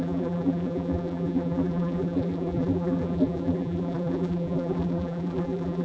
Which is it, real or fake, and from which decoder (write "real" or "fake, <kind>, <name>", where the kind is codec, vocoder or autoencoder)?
fake, vocoder, BigVGAN v2